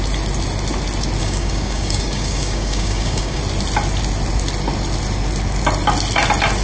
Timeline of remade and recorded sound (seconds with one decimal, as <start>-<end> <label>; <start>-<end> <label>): 0.0-1.2 recorded; 1.2-3.4 remade; 3.4-6.6 recorded